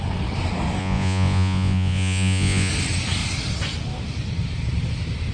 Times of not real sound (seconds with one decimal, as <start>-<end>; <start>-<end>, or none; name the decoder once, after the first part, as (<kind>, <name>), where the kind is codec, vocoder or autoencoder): 0.8-2.7 (vocoder, Vocos)